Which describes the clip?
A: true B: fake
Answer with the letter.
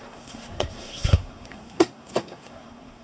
B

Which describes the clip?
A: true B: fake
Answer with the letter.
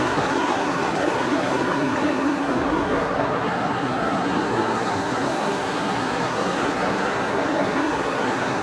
B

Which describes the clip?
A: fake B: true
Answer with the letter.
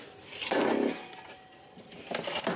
B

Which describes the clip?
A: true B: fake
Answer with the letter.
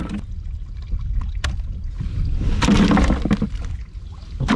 A